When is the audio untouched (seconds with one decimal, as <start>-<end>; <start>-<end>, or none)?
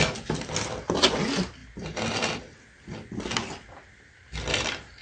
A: 0.0-5.0